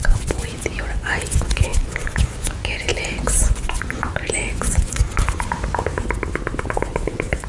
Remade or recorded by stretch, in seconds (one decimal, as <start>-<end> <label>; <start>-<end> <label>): 0.0-5.0 remade; 5.0-6.7 recorded; 6.7-7.5 remade